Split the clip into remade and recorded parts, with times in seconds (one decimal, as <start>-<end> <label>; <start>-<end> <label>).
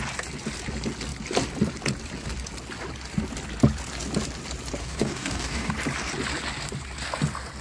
0.0-4.8 recorded; 4.8-5.7 remade; 5.7-7.6 recorded